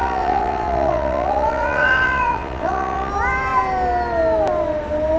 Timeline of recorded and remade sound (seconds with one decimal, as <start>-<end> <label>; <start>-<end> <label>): 0.0-3.1 remade; 3.1-5.2 recorded